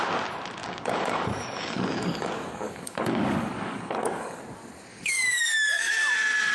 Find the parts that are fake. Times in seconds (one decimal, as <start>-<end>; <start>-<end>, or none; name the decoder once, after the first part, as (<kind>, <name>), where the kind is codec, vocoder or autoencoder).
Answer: 0.6-4.4 (codec, DAC); 4.9-6.1